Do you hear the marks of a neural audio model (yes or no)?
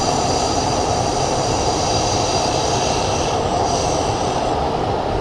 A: yes